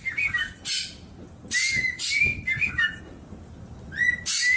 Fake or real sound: real